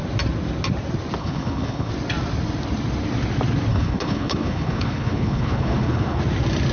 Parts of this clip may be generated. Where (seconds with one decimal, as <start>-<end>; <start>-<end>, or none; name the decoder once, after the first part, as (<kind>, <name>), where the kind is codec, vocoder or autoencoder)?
1.2-1.9 (codec, HILCodec); 3.7-6.2